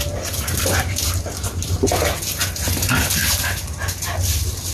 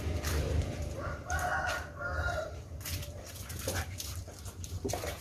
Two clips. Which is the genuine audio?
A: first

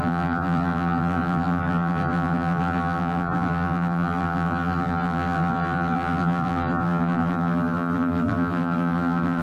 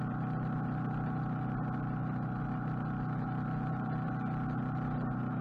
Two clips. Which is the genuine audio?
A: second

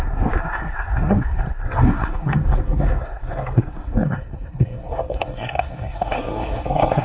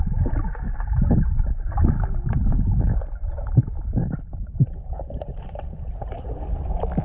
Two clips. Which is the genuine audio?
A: second